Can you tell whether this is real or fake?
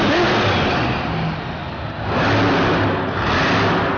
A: real